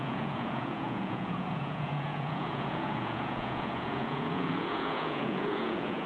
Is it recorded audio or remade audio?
remade